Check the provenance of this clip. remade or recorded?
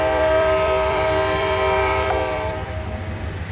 remade